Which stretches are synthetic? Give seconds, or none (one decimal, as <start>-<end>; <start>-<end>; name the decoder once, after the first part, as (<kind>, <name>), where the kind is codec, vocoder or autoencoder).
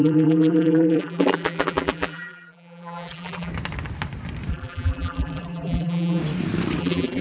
0.0-3.5 (vocoder, BigVGAN v2); 4.5-6.2; 6.8-7.2